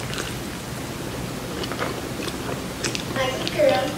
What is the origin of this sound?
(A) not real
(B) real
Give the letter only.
B